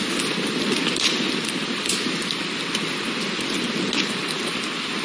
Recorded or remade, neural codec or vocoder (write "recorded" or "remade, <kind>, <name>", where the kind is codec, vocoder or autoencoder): recorded